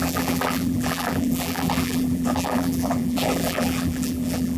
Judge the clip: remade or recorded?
remade